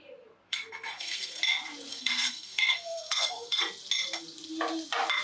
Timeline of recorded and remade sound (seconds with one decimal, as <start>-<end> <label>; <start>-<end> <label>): 0.0-0.5 recorded; 0.5-1.4 remade; 1.4-1.9 recorded; 1.9-3.6 remade; 3.6-5.2 recorded